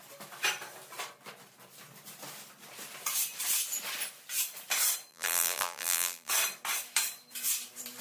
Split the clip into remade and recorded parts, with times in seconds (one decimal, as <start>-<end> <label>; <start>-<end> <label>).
0.0-5.1 recorded; 5.1-6.3 remade; 6.3-8.0 recorded